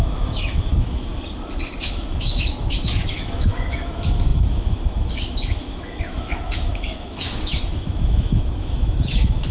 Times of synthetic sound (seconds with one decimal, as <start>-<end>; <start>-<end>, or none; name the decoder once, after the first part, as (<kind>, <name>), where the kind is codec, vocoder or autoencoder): 0.0-1.1 (autoencoder, DAC-VAE); 1.8-9.5